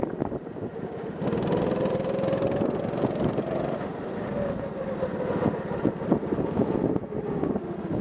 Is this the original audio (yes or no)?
yes